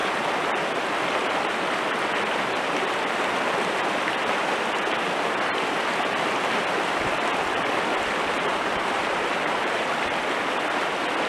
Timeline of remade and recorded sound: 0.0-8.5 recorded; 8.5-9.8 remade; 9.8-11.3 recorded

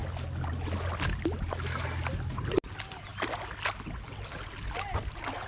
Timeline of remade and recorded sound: 0.0-5.5 recorded

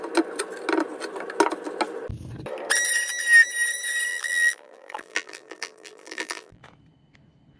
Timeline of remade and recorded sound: 0.0-4.1 recorded; 4.1-6.6 remade; 6.6-7.6 recorded

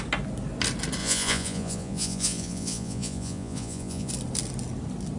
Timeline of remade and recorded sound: 0.0-1.0 recorded; 1.0-4.1 remade; 4.1-5.2 recorded

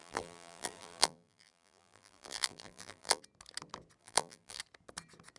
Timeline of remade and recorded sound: 0.0-3.2 remade; 3.2-4.0 recorded; 4.0-4.6 remade; 4.6-5.4 recorded

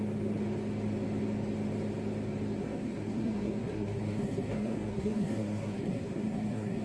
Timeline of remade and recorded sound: 0.0-2.6 recorded; 2.6-6.8 remade

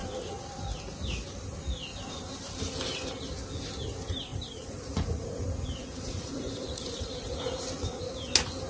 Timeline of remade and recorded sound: 0.0-4.3 recorded; 4.3-7.6 remade; 7.6-8.7 recorded